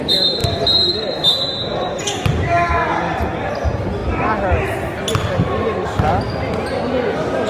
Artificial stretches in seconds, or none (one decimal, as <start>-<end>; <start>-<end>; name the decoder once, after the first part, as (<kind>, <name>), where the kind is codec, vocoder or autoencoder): none